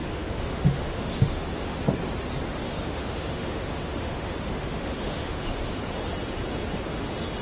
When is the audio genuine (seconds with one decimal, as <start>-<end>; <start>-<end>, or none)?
1.8-2.5; 5.4-7.4